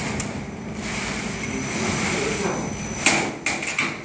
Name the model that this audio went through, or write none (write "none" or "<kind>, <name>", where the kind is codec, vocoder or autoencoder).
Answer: none